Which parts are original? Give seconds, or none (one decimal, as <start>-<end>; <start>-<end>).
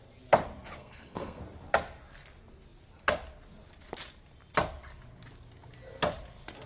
0.0-0.8; 1.4-6.7